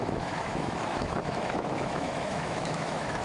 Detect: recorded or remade remade